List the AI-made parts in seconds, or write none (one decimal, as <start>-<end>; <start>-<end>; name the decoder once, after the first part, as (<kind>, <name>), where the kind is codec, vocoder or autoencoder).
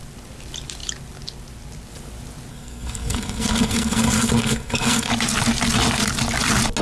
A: 2.5-5.1 (codec, SNAC)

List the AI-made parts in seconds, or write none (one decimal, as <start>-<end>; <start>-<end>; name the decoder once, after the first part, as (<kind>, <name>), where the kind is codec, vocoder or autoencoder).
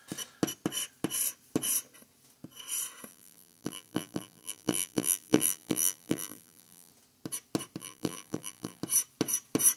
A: 3.1-6.9 (vocoder, BigVGAN v2); 7.8-8.8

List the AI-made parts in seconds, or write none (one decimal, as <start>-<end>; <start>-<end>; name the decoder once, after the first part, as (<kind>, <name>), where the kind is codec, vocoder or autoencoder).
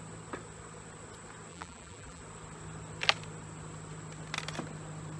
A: 1.5-2.2 (vocoder, BigVGAN v2)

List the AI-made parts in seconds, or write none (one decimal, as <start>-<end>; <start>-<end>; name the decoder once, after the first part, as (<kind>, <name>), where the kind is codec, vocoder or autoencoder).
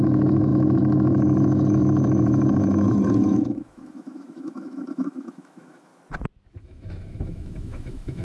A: 0.0-5.9 (autoencoder, DAC-VAE); 6.6-8.2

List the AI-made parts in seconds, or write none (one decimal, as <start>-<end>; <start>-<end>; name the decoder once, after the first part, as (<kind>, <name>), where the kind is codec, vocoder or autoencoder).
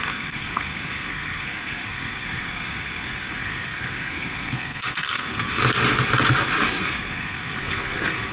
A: 0.0-5.6 (codec, SNAC); 6.8-8.3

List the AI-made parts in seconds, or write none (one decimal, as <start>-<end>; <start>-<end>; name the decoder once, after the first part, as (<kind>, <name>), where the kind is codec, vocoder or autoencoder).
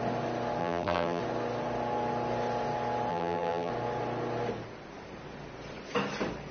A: 0.6-1.2 (vocoder, BigVGAN v2); 3.1-3.7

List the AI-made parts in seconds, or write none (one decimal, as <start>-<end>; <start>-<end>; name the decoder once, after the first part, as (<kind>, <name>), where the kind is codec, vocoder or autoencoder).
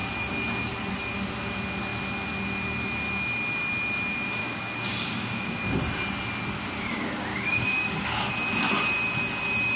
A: 4.4-5.6 (codec, DAC); 7.3-8.3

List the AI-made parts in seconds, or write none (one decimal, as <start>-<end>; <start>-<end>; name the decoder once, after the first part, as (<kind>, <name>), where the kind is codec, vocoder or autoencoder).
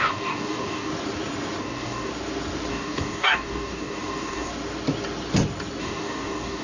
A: 0.0-0.9 (codec, DAC); 1.6-2.1; 2.7-4.5; 5.8-6.6